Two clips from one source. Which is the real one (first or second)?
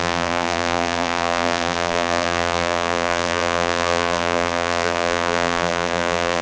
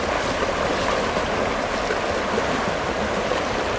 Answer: second